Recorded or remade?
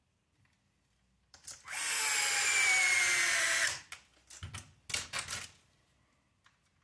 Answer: recorded